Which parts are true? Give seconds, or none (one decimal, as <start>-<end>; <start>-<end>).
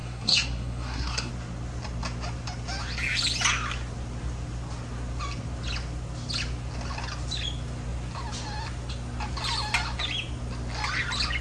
1.3-11.4